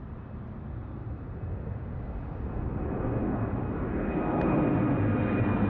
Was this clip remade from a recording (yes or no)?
no